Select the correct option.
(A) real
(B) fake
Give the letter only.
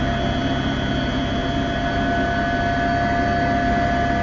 A